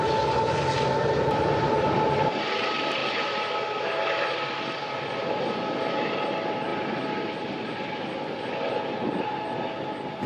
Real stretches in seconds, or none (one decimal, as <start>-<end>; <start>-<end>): 0.0-10.3